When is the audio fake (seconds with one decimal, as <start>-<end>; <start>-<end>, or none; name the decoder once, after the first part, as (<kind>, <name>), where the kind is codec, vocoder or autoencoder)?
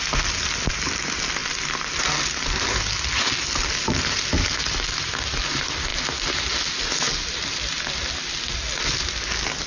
none